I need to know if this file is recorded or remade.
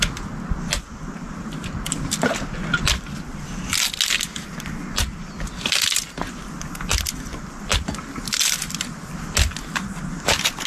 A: recorded